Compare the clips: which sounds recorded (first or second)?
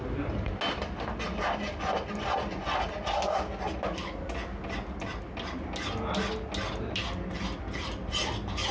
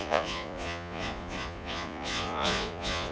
first